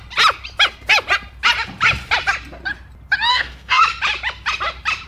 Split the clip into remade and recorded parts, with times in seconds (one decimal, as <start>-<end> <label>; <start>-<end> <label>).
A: 0.0-3.3 recorded; 3.3-3.8 remade; 3.8-5.1 recorded